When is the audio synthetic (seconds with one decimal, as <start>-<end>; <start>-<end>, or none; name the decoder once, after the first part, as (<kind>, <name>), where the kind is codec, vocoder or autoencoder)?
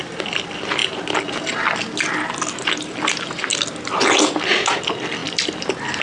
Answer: none